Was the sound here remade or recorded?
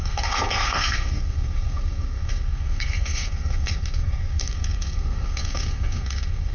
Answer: remade